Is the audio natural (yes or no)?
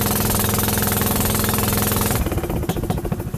yes